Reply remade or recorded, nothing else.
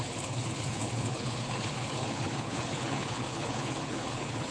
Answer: remade